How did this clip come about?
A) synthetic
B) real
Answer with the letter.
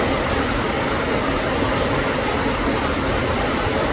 B